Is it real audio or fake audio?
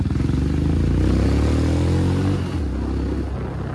real